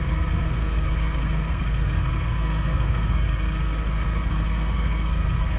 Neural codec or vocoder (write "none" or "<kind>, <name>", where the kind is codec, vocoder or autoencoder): codec, SNAC